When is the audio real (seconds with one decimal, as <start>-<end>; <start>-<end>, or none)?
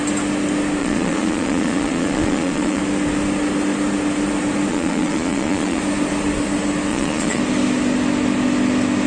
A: 0.0-0.8; 2.8-4.7; 5.8-6.9; 7.4-9.1